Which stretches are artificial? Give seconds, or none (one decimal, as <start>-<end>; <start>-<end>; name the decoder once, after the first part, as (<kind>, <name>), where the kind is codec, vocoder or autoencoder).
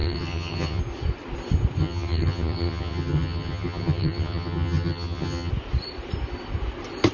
0.0-0.8 (vocoder, HiFi-GAN); 1.8-5.5